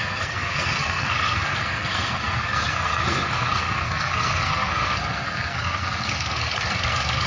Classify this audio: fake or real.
fake